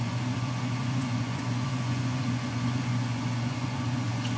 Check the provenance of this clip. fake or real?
fake